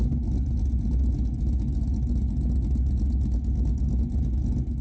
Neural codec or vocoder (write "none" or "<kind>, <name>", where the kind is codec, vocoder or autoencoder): none